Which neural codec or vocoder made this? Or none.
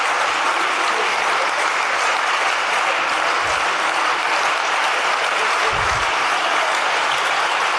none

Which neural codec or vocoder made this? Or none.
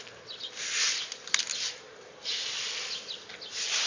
none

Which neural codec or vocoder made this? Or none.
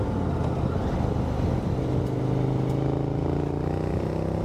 none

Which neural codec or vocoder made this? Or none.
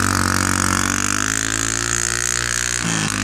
none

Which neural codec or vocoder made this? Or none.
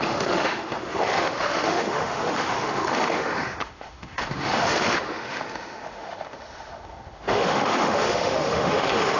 autoencoder, DAC-VAE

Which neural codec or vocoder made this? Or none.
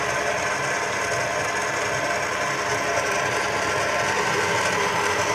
none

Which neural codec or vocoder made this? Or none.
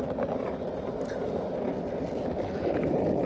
none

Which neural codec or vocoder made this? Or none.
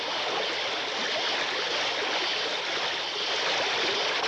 none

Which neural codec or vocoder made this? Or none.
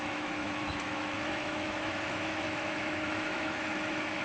autoencoder, DAC-VAE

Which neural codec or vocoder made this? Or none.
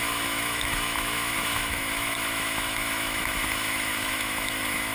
autoencoder, DAC-VAE